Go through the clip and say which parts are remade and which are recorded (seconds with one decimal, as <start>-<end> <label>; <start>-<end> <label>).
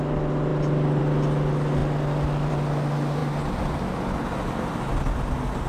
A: 0.0-5.7 recorded